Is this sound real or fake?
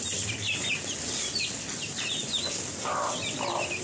real